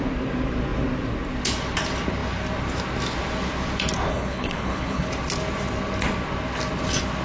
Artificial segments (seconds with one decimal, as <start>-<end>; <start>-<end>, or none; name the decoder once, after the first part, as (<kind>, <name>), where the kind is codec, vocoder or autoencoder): 4.1-5.1 (codec, HILCodec)